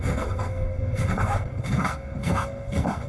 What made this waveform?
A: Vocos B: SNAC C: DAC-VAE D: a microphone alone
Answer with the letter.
B